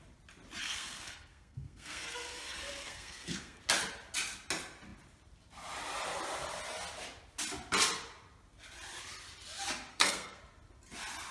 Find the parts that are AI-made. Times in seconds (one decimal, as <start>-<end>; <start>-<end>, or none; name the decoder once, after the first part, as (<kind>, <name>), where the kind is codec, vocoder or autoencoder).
0.6-3.6 (codec, SNAC); 9.9-10.4